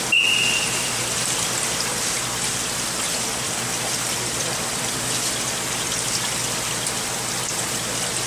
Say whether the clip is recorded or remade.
recorded